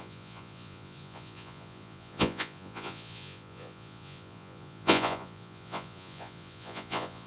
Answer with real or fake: fake